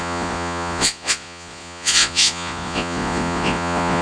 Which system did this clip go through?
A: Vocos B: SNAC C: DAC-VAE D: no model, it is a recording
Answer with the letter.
A